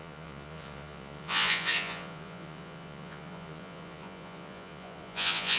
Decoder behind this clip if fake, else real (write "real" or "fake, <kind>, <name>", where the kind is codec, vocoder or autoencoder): fake, vocoder, Vocos